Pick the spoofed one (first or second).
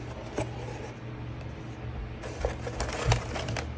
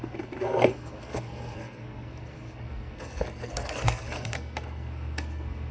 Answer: second